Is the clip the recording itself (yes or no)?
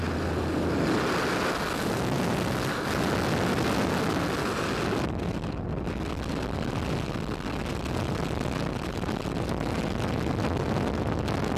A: yes